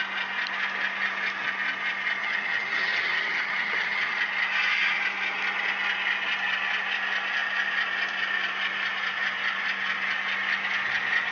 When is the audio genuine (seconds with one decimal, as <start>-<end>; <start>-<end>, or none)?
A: 0.0-2.2; 4.1-11.3